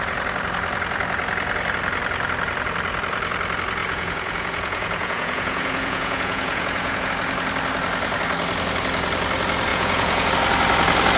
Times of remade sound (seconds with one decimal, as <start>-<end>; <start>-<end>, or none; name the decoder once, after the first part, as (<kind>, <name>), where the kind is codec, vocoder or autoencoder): 3.8-7.1 (vocoder, Vocos); 9.7-10.3